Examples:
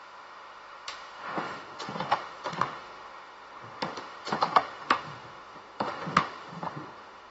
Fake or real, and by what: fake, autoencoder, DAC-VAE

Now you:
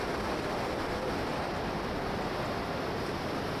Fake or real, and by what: real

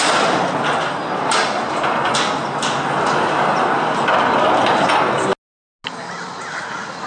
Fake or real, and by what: real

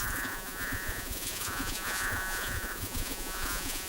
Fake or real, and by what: fake, vocoder, Vocos